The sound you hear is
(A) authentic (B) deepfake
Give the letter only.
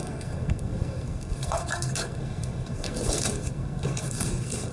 B